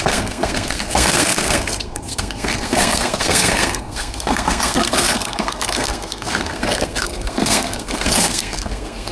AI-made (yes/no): yes